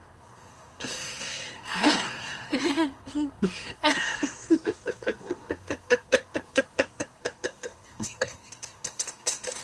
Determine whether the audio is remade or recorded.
remade